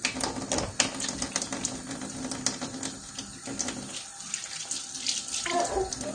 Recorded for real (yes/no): yes